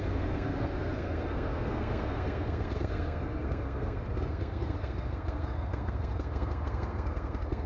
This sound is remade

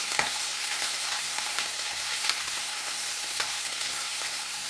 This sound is remade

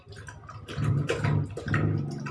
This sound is recorded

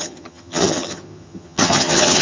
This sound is remade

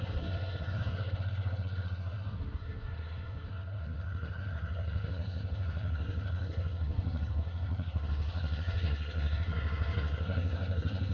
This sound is remade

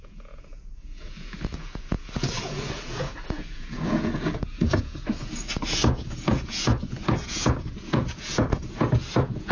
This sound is remade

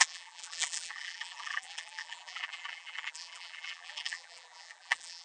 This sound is remade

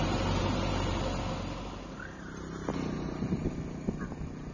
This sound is recorded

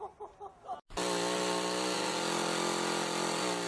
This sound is recorded